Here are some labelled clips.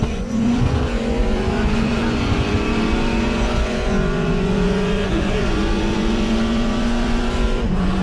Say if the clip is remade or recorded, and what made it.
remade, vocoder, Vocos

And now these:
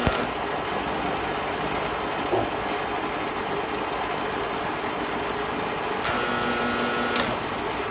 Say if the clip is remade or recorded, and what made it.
recorded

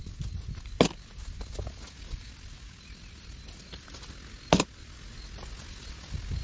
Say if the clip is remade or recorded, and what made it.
recorded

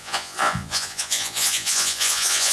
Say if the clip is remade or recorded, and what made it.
remade, vocoder, Vocos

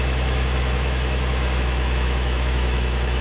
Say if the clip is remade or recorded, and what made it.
remade, autoencoder, DAC-VAE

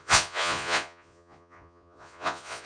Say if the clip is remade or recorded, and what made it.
remade, vocoder, Vocos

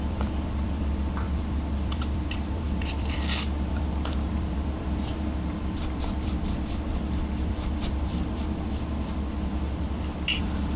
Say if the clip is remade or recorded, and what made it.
remade, vocoder, BigVGAN v2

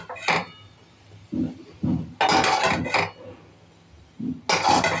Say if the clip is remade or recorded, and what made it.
recorded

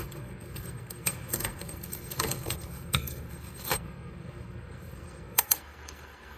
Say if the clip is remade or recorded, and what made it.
remade, codec, SNAC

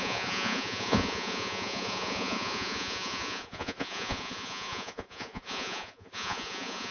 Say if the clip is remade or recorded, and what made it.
remade, vocoder, Vocos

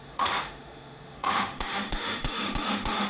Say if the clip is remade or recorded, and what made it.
remade, autoencoder, DAC-VAE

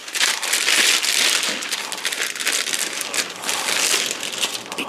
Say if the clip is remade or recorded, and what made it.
recorded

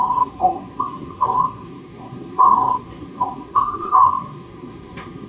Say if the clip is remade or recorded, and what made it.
remade, codec, SNAC